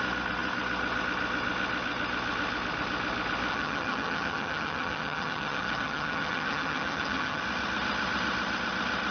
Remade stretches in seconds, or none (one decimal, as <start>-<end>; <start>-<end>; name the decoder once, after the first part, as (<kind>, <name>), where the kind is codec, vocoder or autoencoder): 3.5-7.4 (vocoder, HiFi-GAN)